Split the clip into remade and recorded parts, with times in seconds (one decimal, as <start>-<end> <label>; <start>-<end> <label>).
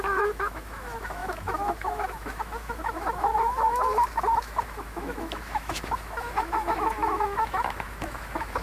0.0-8.6 remade